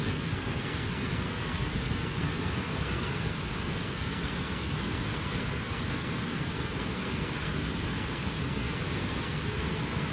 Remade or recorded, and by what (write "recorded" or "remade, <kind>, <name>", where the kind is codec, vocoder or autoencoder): remade, codec, SNAC